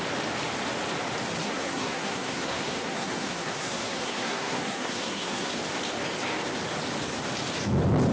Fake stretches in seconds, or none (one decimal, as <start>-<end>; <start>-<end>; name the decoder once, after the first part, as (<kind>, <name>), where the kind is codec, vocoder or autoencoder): 1.4-5.5 (codec, SNAC)